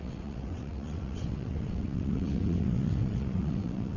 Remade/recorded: remade